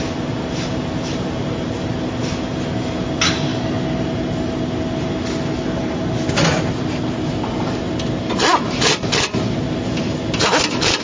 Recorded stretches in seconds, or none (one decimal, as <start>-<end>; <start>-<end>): 0.0-11.0

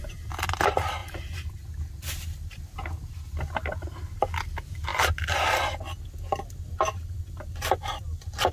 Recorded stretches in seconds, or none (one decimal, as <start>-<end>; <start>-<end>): 0.0-8.5

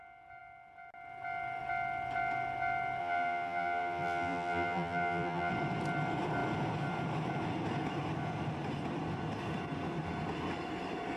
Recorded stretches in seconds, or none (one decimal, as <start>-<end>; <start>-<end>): 0.0-3.0; 5.5-11.2

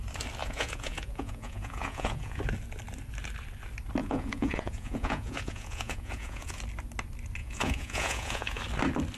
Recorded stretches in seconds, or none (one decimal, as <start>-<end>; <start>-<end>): 0.0-0.4; 2.4-4.0; 6.6-7.4; 8.6-9.2

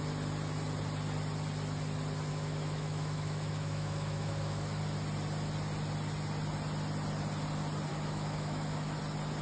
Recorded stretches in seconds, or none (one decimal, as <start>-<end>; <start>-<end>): 0.0-2.3; 4.8-7.9; 9.0-9.4

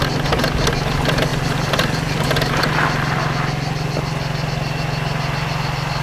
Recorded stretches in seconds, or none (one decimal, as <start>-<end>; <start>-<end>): 0.0-6.0